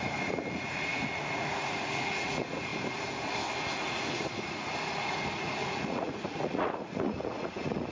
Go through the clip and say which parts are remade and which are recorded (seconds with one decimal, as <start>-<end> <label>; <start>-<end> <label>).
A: 0.0-2.7 remade; 2.7-3.8 recorded; 3.8-7.9 remade